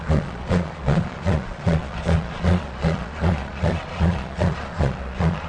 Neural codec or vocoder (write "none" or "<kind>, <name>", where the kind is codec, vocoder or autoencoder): vocoder, Vocos